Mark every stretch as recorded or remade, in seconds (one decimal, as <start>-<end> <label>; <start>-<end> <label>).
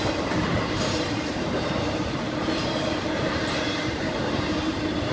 0.0-5.1 remade